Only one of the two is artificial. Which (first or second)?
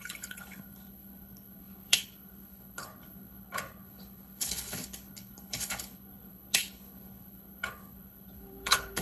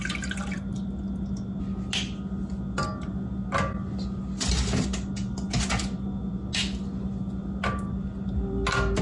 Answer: first